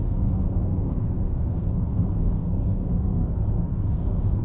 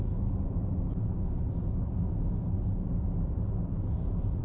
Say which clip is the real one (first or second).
second